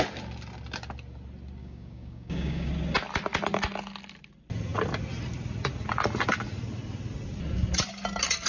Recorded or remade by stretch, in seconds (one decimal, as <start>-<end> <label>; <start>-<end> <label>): 0.0-1.6 recorded; 1.6-2.7 remade; 2.7-8.5 recorded